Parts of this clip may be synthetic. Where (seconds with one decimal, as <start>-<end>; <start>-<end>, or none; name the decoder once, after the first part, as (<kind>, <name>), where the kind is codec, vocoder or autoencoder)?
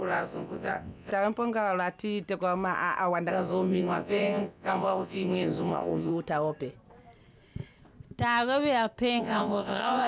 0.0-1.1 (vocoder, WaveNeXt); 3.3-6.1; 9.2-10.1